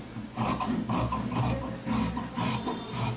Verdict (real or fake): real